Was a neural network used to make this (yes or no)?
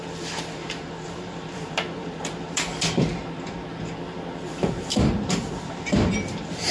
yes